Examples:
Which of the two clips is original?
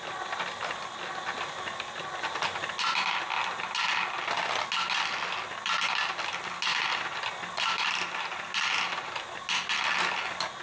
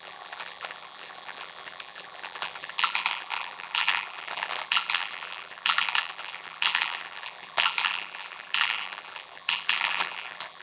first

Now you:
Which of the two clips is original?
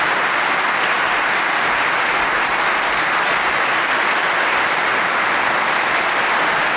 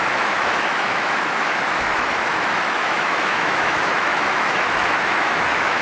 first